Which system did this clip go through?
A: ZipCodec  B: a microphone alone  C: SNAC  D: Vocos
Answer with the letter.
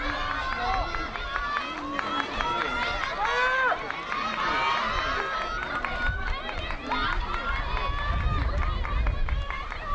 B